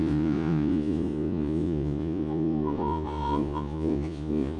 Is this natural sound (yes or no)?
no